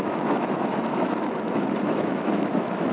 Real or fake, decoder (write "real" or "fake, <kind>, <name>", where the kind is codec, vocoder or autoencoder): fake, autoencoder, DAC-VAE